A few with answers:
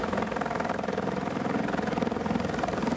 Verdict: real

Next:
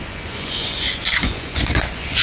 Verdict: fake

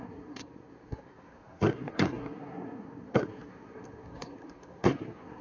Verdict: fake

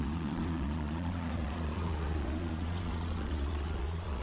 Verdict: fake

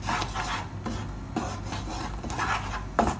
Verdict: real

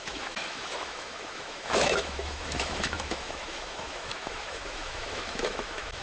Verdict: fake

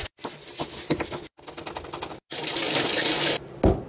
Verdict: real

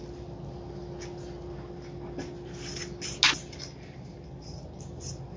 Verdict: real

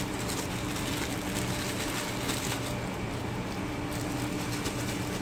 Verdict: real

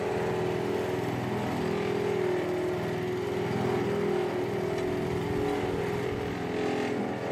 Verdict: real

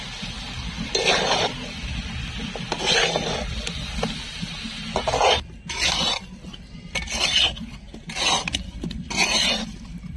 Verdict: real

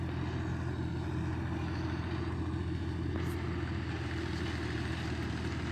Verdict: real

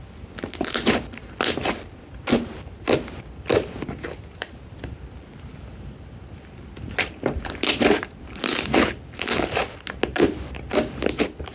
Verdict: real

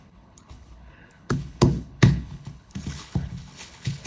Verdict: fake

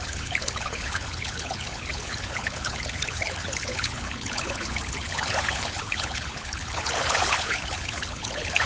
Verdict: fake